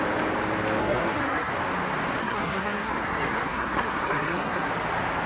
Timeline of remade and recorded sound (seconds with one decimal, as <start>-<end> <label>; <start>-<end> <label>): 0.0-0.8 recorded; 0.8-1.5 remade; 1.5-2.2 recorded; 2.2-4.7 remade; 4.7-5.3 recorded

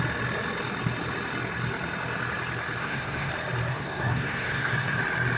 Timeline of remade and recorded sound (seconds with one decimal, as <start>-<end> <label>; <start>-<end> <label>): 0.0-2.8 recorded; 2.8-3.3 remade; 3.3-3.7 recorded; 3.7-5.0 remade; 5.0-5.4 recorded

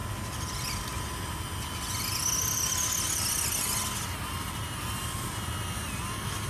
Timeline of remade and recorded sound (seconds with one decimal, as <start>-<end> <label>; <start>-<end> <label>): 0.0-6.5 recorded